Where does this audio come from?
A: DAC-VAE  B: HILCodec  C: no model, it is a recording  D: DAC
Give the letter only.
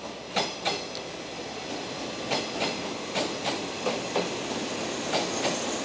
C